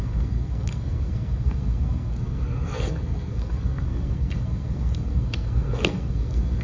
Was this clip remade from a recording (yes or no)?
yes